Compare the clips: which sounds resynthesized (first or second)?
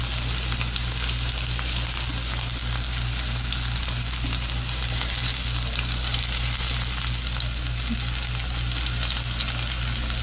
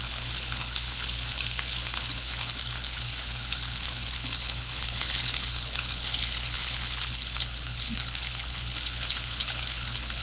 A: second